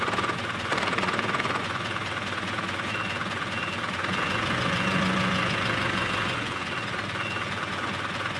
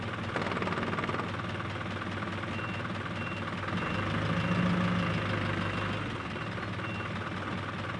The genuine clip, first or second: second